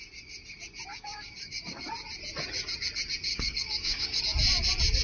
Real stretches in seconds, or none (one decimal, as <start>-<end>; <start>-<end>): 0.0-0.9; 1.9-3.3; 4.2-5.0